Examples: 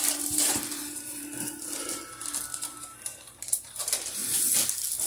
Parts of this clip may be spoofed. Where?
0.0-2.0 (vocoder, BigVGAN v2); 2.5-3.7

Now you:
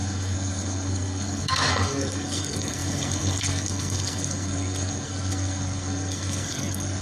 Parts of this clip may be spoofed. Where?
0.0-7.0 (codec, SNAC)

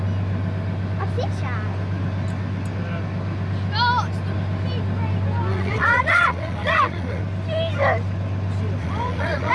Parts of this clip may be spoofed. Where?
5.5-7.2 (vocoder, WaveNeXt); 8.8-9.5

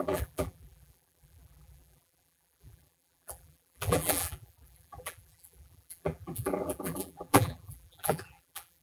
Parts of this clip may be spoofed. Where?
0.0-8.8 (vocoder, BigVGAN v2)

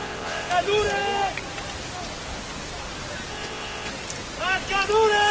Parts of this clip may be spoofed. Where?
0.0-0.5 (vocoder, WaveNeXt); 3.3-3.9

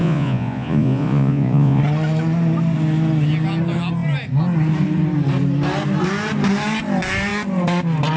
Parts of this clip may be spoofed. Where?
0.0-1.8 (vocoder, Vocos)

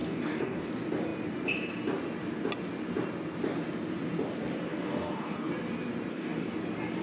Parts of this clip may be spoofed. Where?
0.0-0.7 (codec, DAC); 4.7-5.5; 6.1-6.6

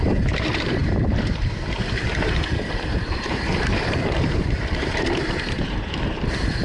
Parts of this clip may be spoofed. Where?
0.0-6.6 (vocoder, BigVGAN v2)